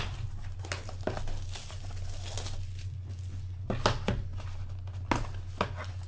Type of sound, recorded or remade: recorded